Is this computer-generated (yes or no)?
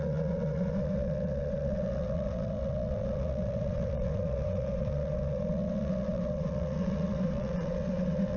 yes